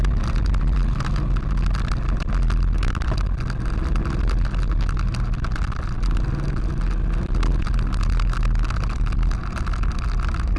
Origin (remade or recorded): recorded